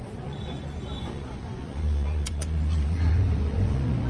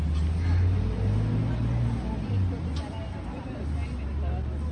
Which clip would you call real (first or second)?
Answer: second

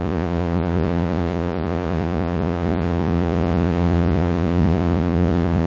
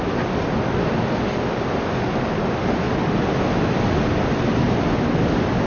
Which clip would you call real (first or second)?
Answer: second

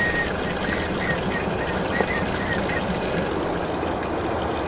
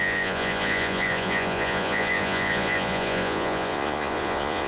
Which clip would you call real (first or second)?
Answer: first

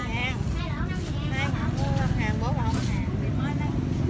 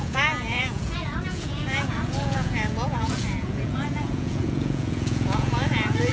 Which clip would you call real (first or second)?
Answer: first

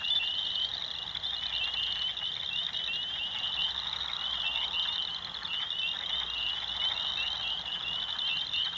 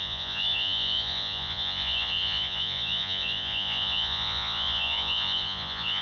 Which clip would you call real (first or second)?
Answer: first